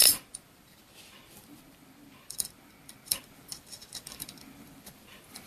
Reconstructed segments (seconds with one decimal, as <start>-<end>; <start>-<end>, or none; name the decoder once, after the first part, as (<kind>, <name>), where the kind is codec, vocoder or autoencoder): 0.0-5.5 (vocoder, BigVGAN v2)